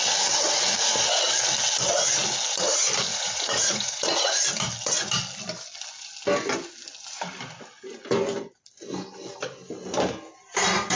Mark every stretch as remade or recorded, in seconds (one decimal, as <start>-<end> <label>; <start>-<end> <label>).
0.0-3.1 recorded; 3.1-4.2 remade; 4.2-11.0 recorded